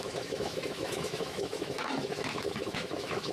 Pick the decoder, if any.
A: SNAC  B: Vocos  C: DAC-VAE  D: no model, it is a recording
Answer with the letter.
C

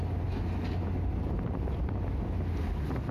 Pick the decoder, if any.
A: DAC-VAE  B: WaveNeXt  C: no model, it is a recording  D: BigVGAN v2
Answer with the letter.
C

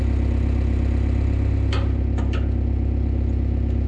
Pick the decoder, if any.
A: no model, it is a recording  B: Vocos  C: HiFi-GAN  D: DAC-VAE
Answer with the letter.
A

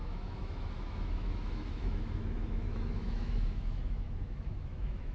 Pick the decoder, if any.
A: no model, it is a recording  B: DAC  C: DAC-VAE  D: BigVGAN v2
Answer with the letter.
C